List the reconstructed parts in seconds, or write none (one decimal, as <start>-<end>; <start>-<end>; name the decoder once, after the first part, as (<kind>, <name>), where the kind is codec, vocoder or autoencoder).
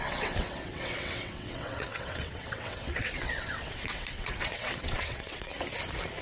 0.0-5.5 (vocoder, WaveNeXt)